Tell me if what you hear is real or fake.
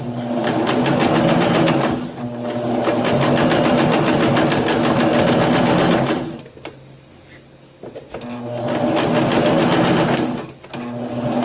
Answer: real